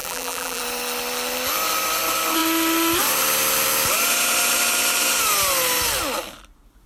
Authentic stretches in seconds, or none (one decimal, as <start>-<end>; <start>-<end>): 0.6-6.9